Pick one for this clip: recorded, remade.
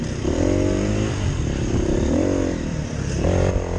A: remade